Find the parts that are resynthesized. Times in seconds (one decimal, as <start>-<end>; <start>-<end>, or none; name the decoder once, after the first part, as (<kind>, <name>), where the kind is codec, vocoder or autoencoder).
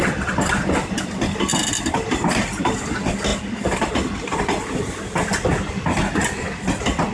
none